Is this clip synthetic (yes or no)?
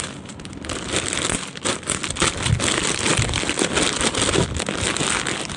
no